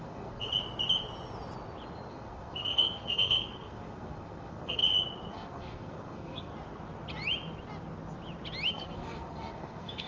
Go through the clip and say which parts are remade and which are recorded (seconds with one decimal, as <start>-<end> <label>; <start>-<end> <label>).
0.0-0.5 remade; 0.5-2.1 recorded; 2.1-4.8 remade; 4.8-5.3 recorded; 5.3-6.5 remade; 6.5-8.7 recorded; 8.7-10.1 remade